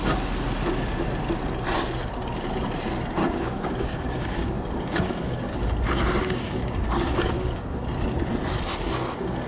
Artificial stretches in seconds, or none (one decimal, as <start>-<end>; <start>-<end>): 3.2-5.6; 6.2-7.8